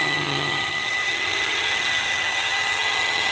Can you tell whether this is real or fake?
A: fake